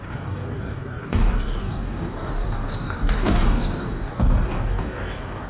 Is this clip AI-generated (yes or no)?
yes